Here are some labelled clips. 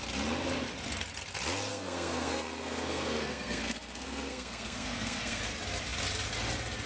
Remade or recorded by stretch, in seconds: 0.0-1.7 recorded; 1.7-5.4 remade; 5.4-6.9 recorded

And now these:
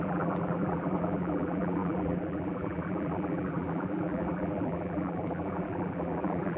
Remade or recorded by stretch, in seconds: 0.0-6.6 remade